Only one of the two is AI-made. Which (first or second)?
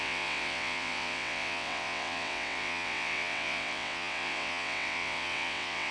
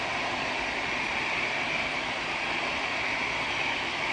first